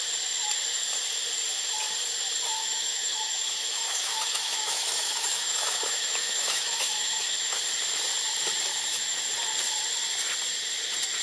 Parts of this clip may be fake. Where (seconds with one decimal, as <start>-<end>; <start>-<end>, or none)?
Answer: 2.6-7.6; 8.7-9.2